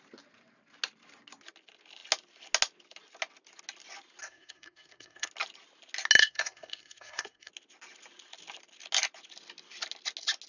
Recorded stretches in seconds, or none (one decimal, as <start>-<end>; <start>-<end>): 0.0-4.2; 5.3-6.2; 7.5-10.5

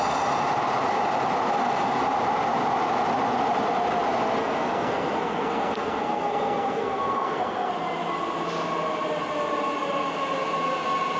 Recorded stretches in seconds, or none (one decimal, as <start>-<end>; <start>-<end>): 0.0-4.4; 7.7-11.2

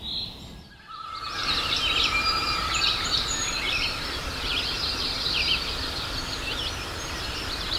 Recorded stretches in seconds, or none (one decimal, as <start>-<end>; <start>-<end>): 0.0-7.8

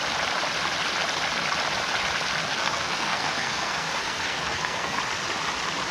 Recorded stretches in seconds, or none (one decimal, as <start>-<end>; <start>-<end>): 0.0-2.5; 5.0-5.9

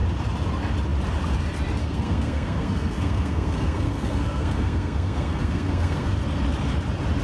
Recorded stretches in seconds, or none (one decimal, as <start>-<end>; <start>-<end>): 0.0-1.8; 6.1-7.2

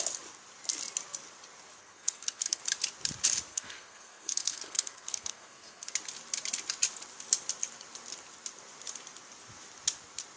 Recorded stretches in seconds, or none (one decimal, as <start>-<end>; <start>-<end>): 0.0-1.8; 2.6-3.5; 5.9-10.4

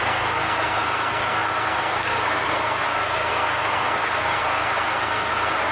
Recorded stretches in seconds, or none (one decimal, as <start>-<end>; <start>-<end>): none

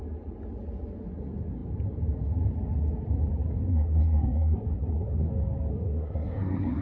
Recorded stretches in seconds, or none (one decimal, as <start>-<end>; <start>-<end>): 0.0-3.7; 5.3-5.7